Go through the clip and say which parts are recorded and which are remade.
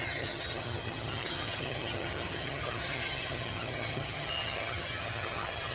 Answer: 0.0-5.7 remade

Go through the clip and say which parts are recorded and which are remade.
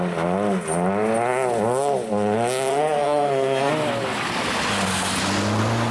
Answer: 0.0-2.7 recorded; 2.7-3.7 remade; 3.7-5.9 recorded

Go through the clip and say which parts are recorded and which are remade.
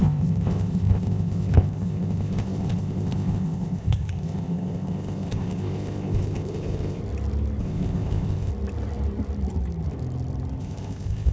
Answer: 0.0-7.0 remade; 7.0-7.6 recorded; 7.6-8.5 remade; 8.5-10.6 recorded; 10.6-11.3 remade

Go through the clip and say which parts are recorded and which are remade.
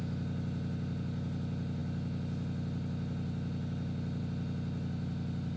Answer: 0.0-5.6 recorded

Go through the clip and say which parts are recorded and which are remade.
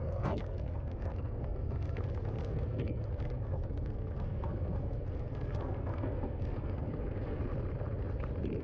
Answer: 0.0-7.4 remade; 7.4-8.6 recorded